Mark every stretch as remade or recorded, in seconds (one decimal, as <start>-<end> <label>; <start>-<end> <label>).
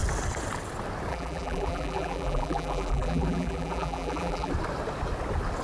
0.0-1.1 recorded; 1.1-4.5 remade; 4.5-5.6 recorded